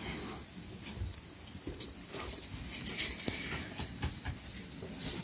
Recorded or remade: recorded